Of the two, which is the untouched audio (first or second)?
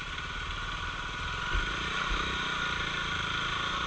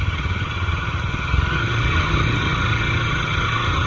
first